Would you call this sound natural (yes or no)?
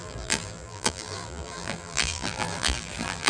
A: no